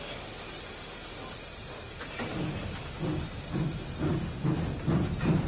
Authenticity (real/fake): real